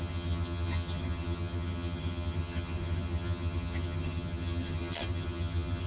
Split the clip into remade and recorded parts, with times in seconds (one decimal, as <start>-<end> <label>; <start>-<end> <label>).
0.0-5.9 remade